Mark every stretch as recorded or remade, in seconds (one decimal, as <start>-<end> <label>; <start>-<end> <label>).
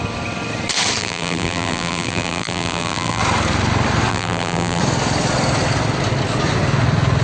0.0-1.0 recorded; 1.0-3.2 remade; 3.2-4.1 recorded; 4.1-4.8 remade; 4.8-7.2 recorded